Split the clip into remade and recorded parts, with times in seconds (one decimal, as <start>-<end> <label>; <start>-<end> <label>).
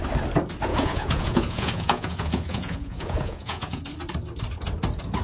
0.0-0.7 recorded; 0.7-3.8 remade; 3.8-5.2 recorded